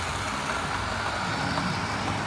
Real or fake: real